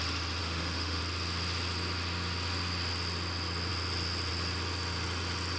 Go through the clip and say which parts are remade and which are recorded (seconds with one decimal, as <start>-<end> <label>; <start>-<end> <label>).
0.0-0.4 recorded; 0.4-1.0 remade; 1.0-5.6 recorded